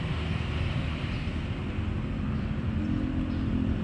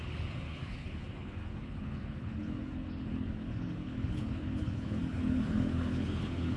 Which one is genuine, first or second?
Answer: first